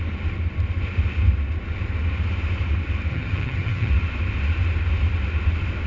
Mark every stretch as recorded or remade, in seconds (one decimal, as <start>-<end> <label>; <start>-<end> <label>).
0.0-3.1 recorded; 3.1-3.9 remade; 3.9-5.9 recorded